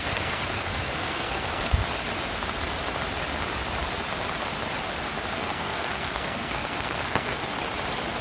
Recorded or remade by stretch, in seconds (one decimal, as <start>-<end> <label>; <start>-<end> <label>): 0.0-1.8 remade; 1.8-5.3 recorded; 5.3-7.4 remade; 7.4-8.2 recorded